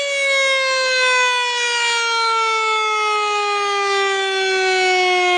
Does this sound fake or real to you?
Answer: real